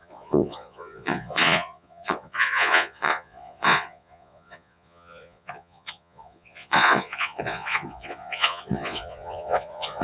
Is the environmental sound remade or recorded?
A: remade